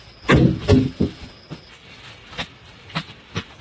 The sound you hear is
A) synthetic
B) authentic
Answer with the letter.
B